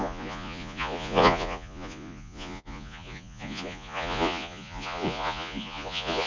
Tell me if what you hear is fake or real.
fake